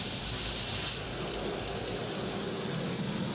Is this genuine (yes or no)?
yes